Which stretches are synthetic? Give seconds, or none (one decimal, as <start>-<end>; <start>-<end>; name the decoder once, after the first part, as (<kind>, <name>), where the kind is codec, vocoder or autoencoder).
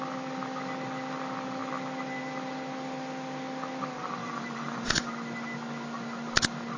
4.2-5.1 (vocoder, BigVGAN v2)